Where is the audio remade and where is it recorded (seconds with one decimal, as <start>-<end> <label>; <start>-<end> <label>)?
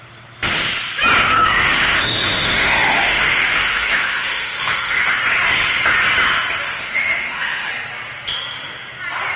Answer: 0.0-1.2 recorded; 1.2-5.2 remade; 5.2-6.7 recorded; 6.7-7.7 remade; 7.7-9.4 recorded